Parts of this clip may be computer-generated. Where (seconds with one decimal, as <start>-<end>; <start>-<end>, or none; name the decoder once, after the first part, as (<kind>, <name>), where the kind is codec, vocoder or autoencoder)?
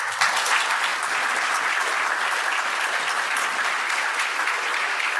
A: none